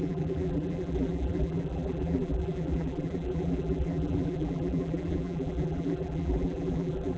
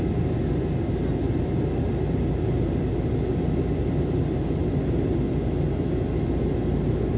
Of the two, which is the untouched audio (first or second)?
second